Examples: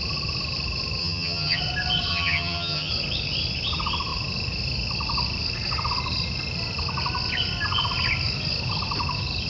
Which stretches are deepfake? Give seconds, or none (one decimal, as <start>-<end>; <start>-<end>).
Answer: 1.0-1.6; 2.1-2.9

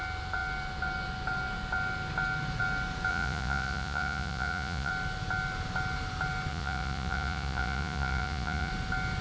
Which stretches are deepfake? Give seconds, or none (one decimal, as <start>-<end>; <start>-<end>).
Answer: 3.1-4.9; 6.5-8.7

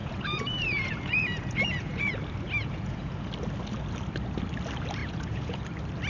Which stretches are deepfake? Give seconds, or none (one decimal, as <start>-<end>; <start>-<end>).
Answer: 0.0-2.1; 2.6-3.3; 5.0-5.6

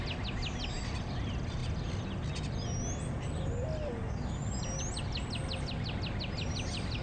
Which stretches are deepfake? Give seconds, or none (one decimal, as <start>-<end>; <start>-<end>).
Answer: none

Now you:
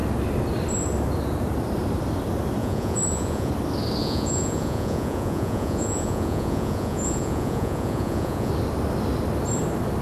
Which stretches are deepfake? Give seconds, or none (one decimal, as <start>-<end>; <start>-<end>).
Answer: 2.6-3.5; 4.0-8.5